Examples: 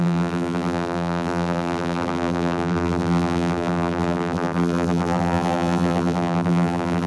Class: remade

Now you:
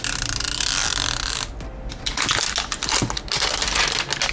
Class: recorded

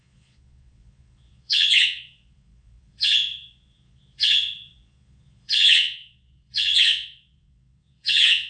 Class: remade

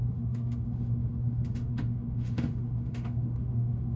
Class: remade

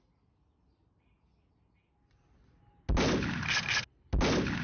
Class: recorded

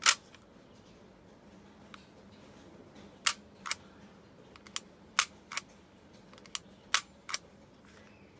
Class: recorded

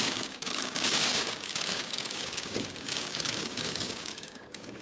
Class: remade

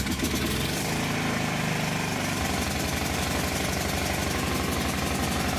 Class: recorded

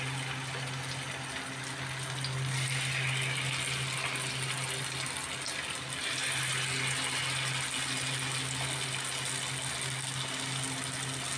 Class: recorded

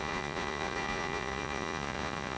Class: remade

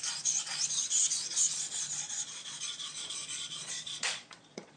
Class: remade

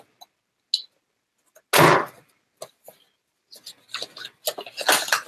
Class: recorded